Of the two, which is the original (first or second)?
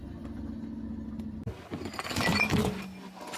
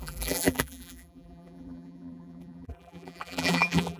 first